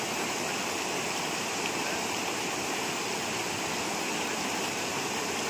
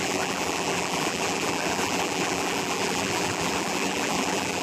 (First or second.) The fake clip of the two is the second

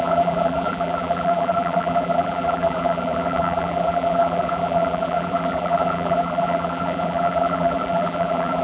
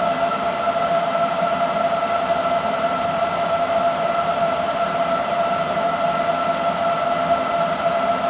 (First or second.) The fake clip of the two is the first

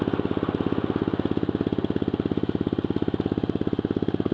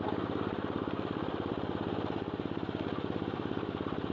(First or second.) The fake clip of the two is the second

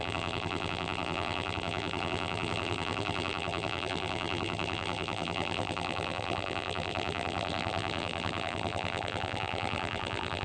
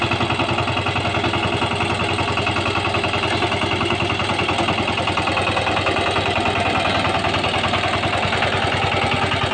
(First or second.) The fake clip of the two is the first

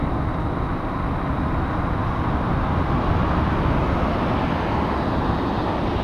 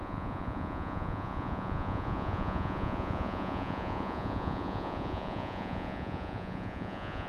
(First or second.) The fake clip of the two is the second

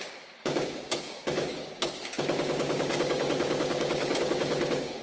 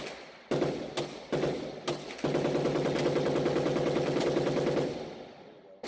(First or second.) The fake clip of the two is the first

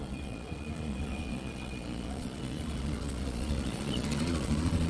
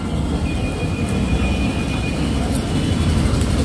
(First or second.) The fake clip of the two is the first